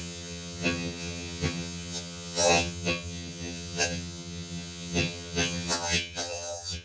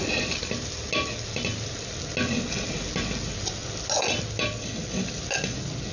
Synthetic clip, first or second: first